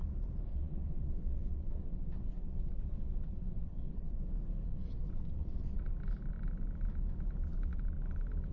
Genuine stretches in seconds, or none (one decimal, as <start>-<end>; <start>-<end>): 0.0-0.5; 4.2-4.7; 5.9-8.5